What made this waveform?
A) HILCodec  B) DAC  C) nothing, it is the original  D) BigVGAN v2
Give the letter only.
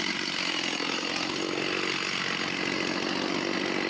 C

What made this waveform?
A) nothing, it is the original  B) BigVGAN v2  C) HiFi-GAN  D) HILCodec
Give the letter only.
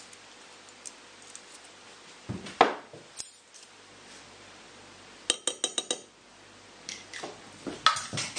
A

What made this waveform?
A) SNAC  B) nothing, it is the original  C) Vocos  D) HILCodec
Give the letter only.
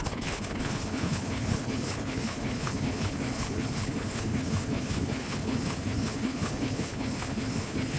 D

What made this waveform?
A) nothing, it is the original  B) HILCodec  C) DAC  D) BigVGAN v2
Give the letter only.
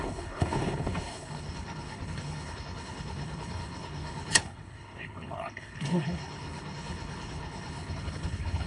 B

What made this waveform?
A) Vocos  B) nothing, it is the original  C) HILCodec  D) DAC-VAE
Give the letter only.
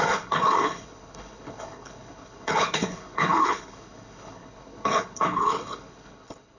C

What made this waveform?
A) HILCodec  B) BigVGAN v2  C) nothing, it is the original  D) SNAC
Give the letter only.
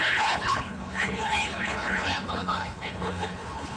A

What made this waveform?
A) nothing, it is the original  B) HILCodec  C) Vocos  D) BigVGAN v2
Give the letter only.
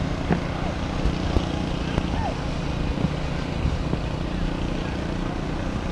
A